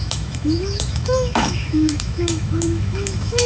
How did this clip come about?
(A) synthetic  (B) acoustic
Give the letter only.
A